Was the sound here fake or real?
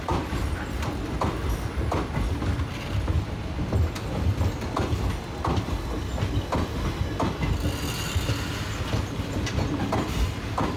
real